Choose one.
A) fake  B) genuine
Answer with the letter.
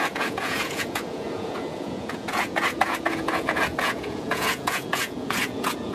A